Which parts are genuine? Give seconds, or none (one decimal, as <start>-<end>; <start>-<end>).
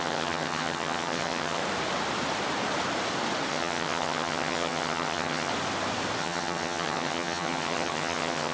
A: 1.6-3.5; 5.5-6.2